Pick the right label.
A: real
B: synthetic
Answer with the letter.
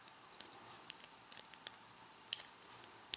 B